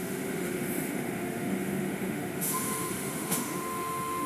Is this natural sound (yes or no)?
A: no